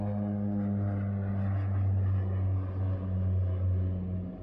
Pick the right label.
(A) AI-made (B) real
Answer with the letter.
B